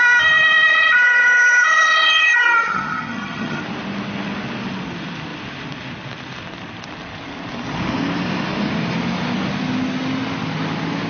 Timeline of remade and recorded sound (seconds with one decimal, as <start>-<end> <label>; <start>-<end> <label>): 0.0-0.7 recorded; 0.7-3.6 remade; 3.6-11.1 recorded

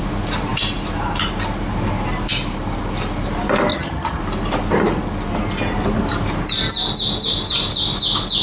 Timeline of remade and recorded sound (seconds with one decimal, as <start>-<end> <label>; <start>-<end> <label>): 0.0-3.7 recorded; 3.7-4.2 remade; 4.2-8.4 recorded

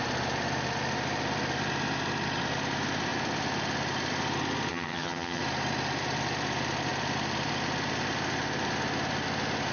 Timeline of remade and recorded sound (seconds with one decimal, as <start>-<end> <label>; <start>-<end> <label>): 0.0-4.7 recorded; 4.7-5.4 remade; 5.4-9.7 recorded

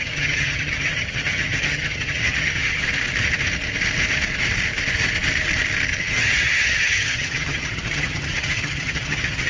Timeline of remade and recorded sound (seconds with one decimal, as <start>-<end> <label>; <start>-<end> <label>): 0.0-2.8 remade; 2.8-6.0 recorded; 6.0-9.5 remade